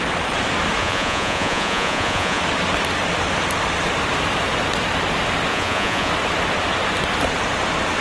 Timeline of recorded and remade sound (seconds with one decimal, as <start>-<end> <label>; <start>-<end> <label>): 0.0-0.8 recorded; 0.8-2.4 remade; 2.4-5.5 recorded; 5.5-6.1 remade; 6.1-8.0 recorded